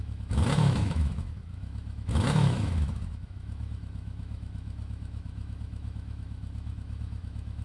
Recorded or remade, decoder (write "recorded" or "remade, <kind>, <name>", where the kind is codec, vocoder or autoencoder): remade, autoencoder, DAC-VAE